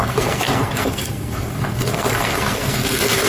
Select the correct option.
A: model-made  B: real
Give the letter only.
A